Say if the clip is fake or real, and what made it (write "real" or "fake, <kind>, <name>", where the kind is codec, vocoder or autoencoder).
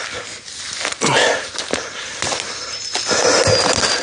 real